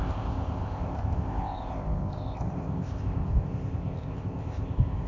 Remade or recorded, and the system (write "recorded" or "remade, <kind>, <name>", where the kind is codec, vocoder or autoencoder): remade, codec, ZipCodec